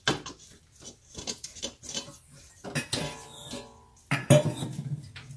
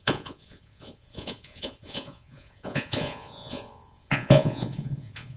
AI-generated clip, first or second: second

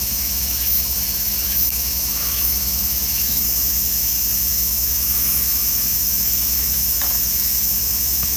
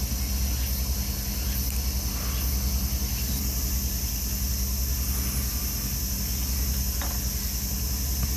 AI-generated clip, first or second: first